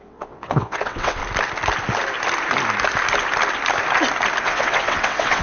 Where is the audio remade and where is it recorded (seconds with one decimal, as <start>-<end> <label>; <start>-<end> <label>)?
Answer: 0.0-1.2 remade; 1.2-4.4 recorded; 4.4-5.4 remade